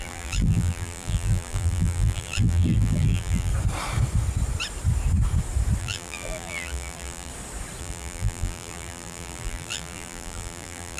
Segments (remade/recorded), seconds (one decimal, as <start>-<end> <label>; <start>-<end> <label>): 0.0-3.5 remade; 3.5-5.8 recorded; 5.8-7.3 remade; 7.3-7.8 recorded; 7.8-11.0 remade